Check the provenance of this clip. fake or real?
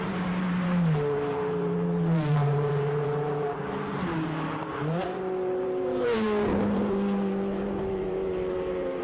fake